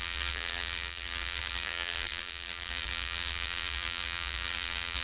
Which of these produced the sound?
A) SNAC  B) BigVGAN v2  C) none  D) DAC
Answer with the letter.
B